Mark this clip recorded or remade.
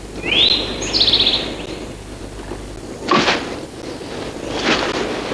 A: recorded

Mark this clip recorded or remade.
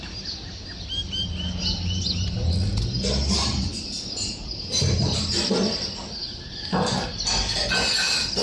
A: recorded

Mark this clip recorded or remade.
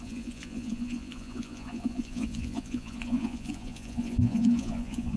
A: remade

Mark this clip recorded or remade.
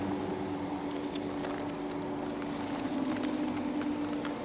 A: recorded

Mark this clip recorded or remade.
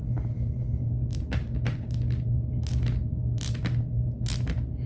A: recorded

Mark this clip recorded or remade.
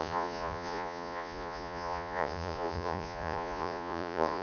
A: remade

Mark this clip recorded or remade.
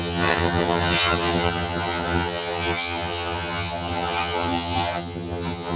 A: remade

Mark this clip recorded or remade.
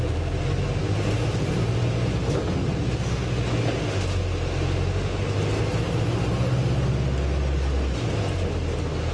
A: recorded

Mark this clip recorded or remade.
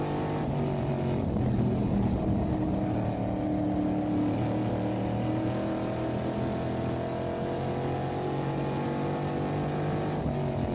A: recorded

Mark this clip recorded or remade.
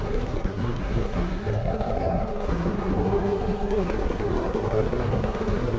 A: remade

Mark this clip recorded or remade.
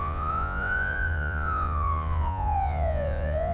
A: remade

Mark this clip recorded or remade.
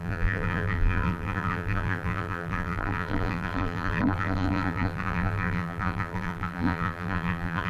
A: remade